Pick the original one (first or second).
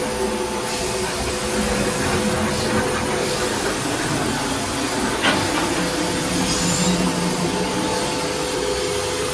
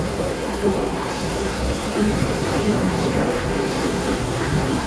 first